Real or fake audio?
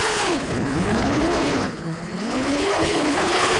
fake